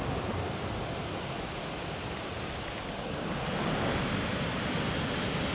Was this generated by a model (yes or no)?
no